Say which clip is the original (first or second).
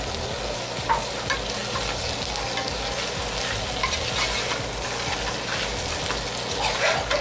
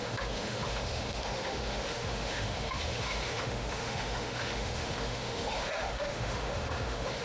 first